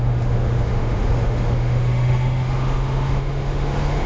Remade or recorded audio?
remade